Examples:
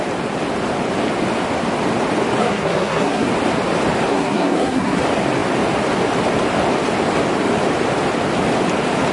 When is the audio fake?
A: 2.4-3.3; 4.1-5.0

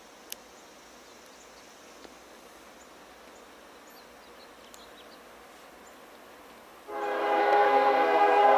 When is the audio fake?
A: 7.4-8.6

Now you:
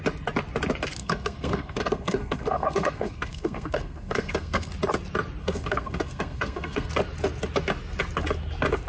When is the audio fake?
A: 1.0-4.7; 5.4-6.9